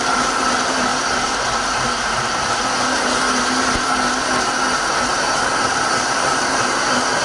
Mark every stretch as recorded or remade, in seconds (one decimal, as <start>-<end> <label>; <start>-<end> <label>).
0.0-0.9 remade; 0.9-5.0 recorded; 5.0-7.2 remade